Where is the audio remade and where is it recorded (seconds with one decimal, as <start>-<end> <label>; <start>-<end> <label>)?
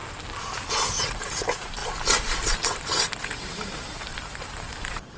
0.0-0.7 recorded; 0.7-1.8 remade; 1.8-2.4 recorded; 2.4-5.2 remade